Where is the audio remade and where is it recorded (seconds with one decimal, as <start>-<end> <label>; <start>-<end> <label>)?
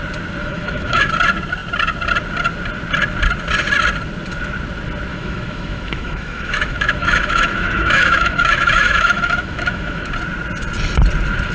0.0-0.4 recorded; 0.4-1.1 remade; 1.1-5.1 recorded; 5.1-10.1 remade; 10.1-11.5 recorded